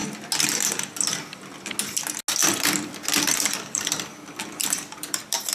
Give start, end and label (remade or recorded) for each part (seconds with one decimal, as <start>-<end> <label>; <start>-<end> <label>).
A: 0.0-2.4 recorded; 2.4-5.5 remade